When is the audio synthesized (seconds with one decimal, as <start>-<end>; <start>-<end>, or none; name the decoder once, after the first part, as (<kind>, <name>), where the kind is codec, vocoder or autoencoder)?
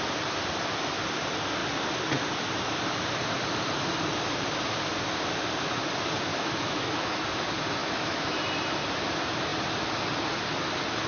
6.3-7.2 (autoencoder, DAC-VAE); 7.8-8.4